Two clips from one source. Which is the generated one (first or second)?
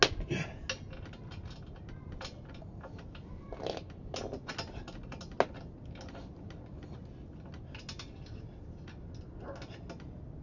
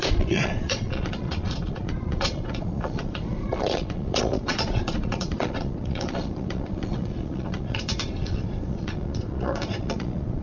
second